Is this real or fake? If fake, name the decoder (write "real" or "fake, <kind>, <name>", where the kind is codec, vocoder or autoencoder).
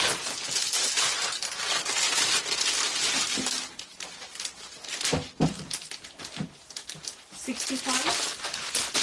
real